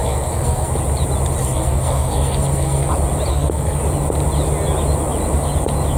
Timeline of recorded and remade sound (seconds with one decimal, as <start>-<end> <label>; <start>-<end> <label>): 0.0-0.7 remade; 0.7-1.4 recorded; 1.4-2.9 remade; 2.9-3.3 recorded; 3.3-3.8 remade; 3.8-6.0 recorded